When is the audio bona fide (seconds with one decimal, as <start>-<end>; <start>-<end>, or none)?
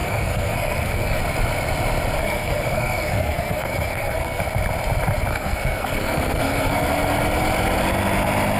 1.2-2.2; 4.4-5.3; 6.9-8.6